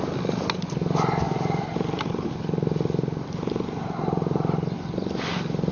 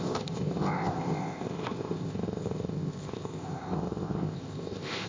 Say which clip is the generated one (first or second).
second